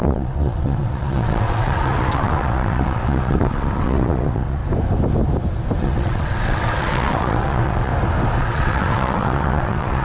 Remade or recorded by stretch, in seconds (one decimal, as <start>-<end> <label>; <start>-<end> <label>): 0.0-4.6 remade; 4.6-5.8 recorded; 5.8-7.9 remade; 7.9-8.4 recorded; 8.4-10.0 remade